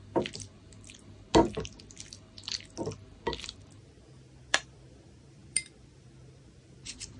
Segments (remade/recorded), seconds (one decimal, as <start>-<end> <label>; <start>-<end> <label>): 0.0-0.5 remade; 0.5-4.4 recorded; 4.4-7.2 remade